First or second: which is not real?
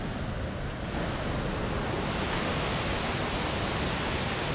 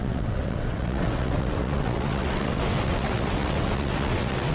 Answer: second